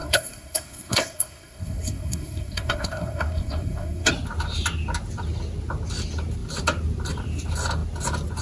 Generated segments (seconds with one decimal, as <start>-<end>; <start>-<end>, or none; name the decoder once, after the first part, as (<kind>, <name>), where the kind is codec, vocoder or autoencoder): 0.0-4.1 (codec, SNAC)